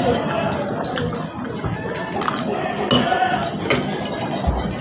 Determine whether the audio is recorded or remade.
recorded